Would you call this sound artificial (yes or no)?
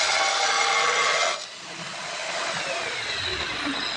no